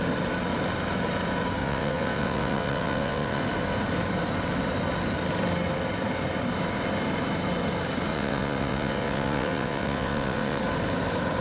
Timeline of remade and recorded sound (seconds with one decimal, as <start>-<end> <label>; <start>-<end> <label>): 0.0-1.6 recorded; 1.6-3.4 remade; 3.4-8.1 recorded; 8.1-10.6 remade; 10.6-11.4 recorded